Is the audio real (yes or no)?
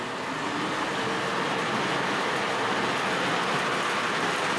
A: yes